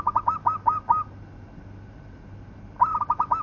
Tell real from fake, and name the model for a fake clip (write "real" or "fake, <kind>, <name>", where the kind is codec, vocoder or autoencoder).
real